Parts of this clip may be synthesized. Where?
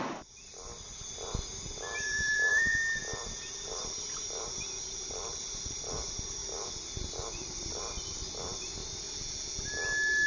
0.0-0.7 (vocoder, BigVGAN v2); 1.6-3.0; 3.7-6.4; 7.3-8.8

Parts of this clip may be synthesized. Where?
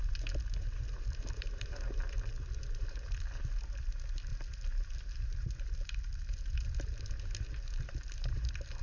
0.0-4.3 (vocoder, BigVGAN v2); 5.3-8.8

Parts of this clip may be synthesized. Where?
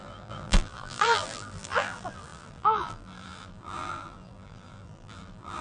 0.0-5.6 (vocoder, BigVGAN v2)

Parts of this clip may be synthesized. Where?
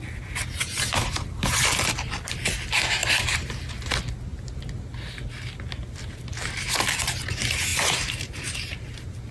0.7-1.5 (vocoder, BigVGAN v2); 3.0-3.7; 4.3-4.8; 7.7-9.3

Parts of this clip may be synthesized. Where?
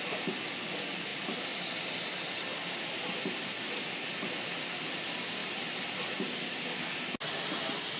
5.4-6.8 (vocoder, BigVGAN v2)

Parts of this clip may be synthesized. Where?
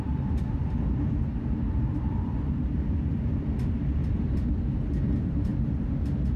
0.0-4.0 (vocoder, BigVGAN v2); 4.5-6.4